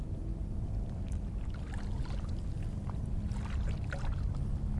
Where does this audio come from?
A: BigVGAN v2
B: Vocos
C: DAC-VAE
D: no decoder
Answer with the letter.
D